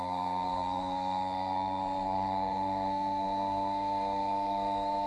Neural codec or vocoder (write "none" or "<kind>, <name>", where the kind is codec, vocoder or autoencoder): codec, SNAC